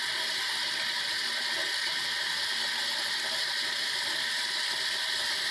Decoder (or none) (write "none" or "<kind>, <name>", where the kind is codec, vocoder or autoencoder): none